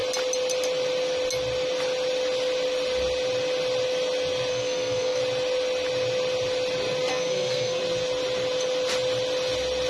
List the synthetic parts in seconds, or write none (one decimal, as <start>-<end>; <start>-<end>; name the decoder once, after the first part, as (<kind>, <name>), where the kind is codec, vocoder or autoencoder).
4.5-5.2 (codec, SNAC); 7.1-7.8